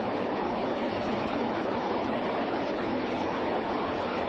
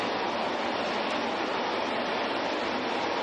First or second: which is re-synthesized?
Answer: first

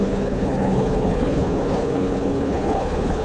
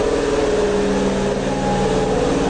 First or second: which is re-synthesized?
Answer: first